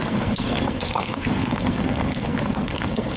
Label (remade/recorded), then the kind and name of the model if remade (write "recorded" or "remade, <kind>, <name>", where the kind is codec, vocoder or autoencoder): remade, codec, SNAC